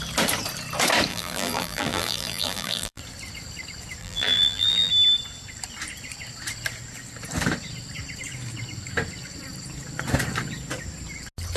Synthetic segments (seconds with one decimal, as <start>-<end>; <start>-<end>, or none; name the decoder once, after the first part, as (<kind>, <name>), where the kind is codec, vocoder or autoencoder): 1.1-3.0 (vocoder, BigVGAN v2); 4.0-4.9